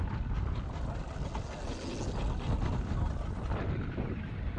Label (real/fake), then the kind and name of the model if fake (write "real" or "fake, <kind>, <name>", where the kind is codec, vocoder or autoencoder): real